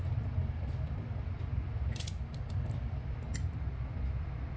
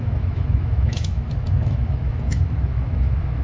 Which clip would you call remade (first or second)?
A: second